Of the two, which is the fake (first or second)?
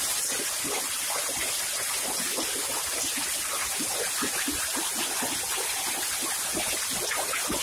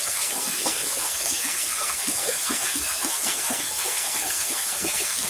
second